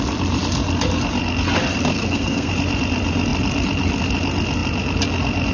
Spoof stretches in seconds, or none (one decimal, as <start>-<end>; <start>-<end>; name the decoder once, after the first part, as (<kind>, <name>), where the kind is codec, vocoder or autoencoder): 1.9-2.5 (codec, SNAC)